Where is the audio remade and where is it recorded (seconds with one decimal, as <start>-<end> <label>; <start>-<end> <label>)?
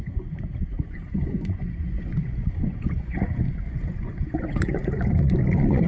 0.0-5.9 remade